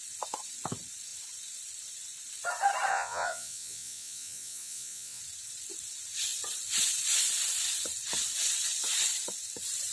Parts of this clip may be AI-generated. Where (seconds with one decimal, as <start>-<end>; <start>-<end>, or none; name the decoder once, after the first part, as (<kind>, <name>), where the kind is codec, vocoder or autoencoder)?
2.9-5.2 (vocoder, Vocos)